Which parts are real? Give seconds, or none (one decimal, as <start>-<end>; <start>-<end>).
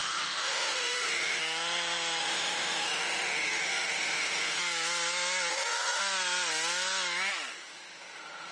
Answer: 1.4-2.2; 4.6-5.5; 6.0-7.5